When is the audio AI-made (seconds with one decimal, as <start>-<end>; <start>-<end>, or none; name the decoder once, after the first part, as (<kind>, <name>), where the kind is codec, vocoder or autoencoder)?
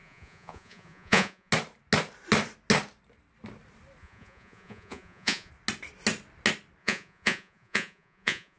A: 0.0-1.5 (vocoder, Vocos); 4.0-5.5; 6.8-8.6